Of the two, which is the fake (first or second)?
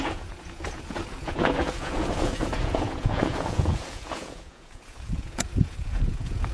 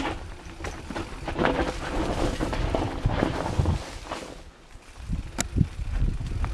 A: first